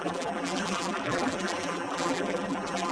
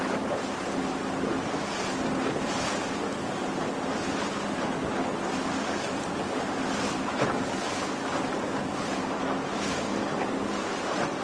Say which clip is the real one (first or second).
second